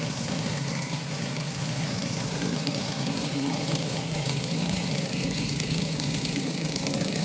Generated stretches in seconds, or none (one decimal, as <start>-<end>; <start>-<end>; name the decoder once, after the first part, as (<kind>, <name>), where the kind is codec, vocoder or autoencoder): 0.0-7.2 (codec, SNAC)